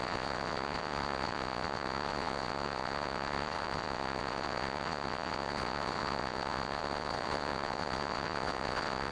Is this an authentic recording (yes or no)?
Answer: no